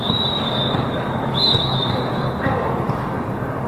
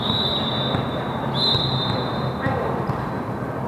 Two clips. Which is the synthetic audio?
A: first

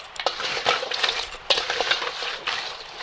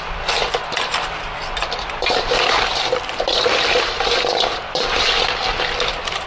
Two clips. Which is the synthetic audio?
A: first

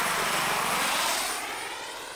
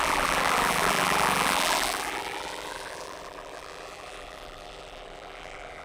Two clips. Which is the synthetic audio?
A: second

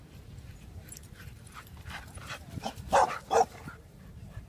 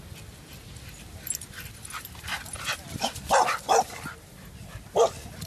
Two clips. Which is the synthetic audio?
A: first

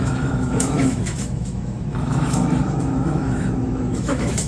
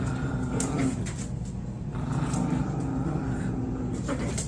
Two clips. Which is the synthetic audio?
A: first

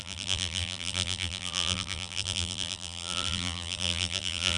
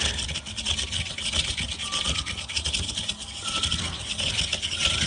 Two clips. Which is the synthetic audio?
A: first